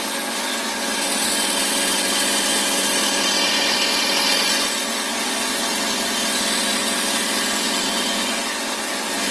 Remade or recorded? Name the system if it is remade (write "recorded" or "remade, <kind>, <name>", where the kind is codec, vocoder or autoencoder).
remade, vocoder, Vocos